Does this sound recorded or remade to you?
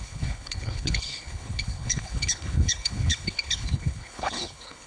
remade